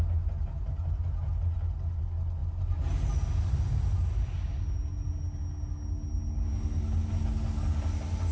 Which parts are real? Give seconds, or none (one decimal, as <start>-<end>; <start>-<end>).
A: 0.0-8.3